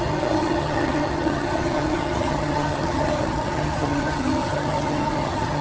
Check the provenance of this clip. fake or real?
fake